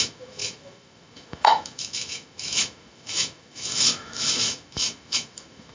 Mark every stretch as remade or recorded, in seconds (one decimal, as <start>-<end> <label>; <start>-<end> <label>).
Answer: 0.0-5.7 remade